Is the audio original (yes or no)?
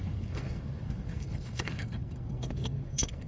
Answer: no